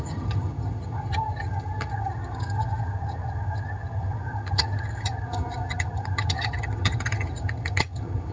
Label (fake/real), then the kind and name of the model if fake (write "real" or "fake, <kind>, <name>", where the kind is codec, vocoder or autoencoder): fake, vocoder, HiFi-GAN